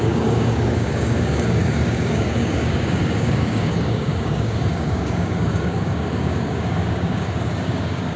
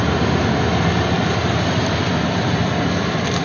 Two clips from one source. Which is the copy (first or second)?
first